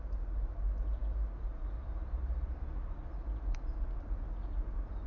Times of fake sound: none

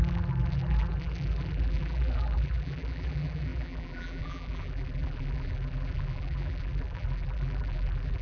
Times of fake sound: 0.0-8.2 (vocoder, BigVGAN v2)

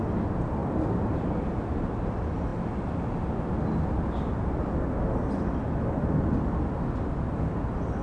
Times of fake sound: none

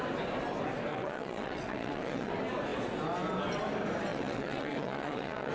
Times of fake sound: 0.9-2.3 (vocoder, WaveNeXt); 4.1-5.5

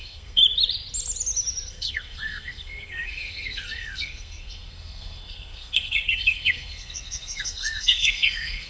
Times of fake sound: 0.0-0.4 (codec, SNAC); 1.7-8.7

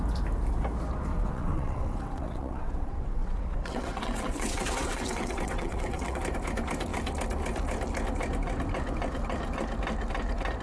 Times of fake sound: 1.1-6.2 (vocoder, WaveNeXt)

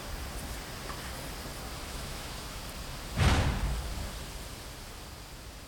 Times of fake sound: 1.8-2.6 (autoencoder, DAC-VAE)